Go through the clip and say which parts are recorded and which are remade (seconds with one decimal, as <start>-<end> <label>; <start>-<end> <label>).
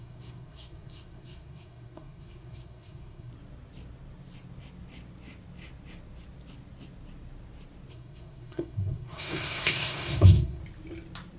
0.0-3.3 remade; 3.3-7.9 recorded; 7.9-10.6 remade; 10.6-11.4 recorded